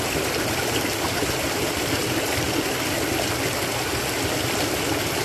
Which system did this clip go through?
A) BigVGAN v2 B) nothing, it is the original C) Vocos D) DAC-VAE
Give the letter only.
B